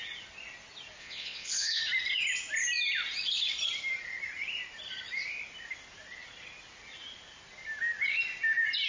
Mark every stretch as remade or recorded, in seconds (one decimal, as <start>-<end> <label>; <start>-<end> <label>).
0.0-1.0 recorded; 1.0-1.8 remade; 1.8-8.9 recorded